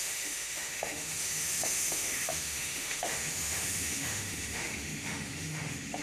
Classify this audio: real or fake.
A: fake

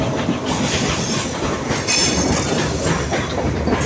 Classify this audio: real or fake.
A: real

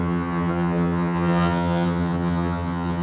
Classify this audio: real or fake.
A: fake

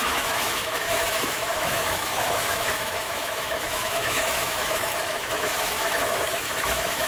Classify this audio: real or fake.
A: fake